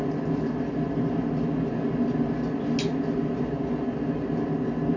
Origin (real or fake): real